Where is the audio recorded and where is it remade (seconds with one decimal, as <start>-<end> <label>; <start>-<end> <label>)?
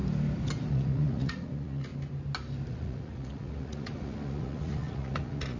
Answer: 0.0-0.7 recorded; 0.7-1.9 remade; 1.9-2.7 recorded; 2.7-5.6 remade